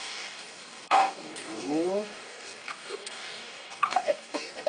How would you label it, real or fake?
fake